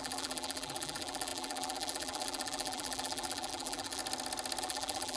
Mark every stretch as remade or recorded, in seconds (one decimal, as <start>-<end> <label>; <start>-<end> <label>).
0.0-4.0 remade; 4.0-4.6 recorded; 4.6-5.2 remade